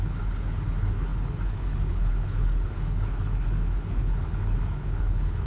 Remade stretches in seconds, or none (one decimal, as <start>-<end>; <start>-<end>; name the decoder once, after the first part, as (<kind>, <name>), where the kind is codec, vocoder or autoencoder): 0.0-5.5 (codec, HILCodec)